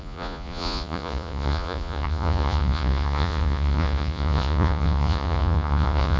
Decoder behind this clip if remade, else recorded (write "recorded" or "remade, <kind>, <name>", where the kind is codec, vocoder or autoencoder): remade, vocoder, Vocos